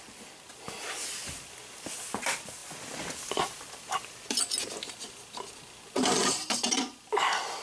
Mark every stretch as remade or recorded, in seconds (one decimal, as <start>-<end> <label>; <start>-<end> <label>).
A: 0.0-7.6 recorded